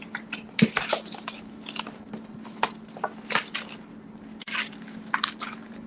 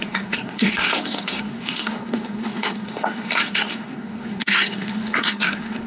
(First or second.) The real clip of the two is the first